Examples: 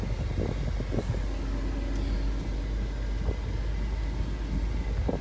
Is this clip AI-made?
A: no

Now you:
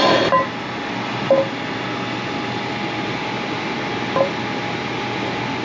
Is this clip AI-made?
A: no